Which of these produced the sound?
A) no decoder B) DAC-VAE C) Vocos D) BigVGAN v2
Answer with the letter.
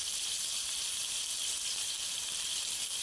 D